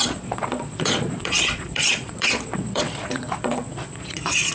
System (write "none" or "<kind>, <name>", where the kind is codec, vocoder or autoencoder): vocoder, Vocos